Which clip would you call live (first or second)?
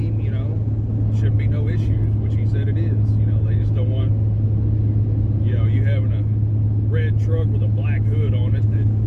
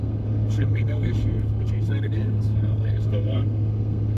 first